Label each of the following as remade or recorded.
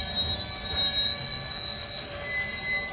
recorded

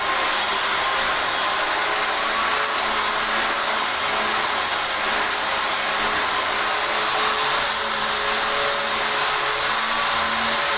recorded